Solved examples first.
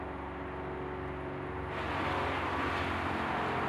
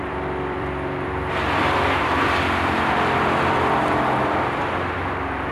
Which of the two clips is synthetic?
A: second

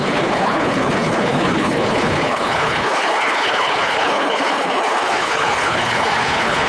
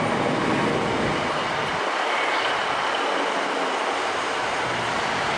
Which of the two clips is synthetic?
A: first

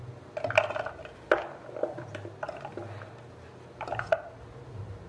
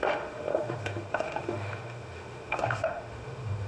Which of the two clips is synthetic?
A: second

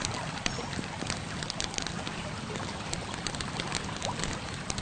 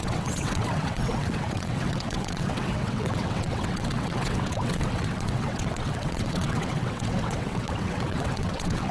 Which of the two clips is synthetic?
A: second